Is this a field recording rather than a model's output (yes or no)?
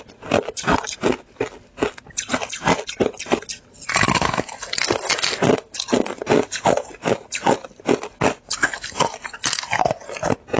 yes